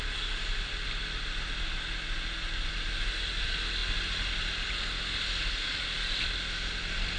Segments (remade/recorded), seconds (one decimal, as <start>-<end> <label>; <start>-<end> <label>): 0.0-7.2 recorded